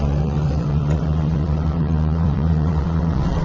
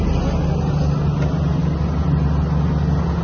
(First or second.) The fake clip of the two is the first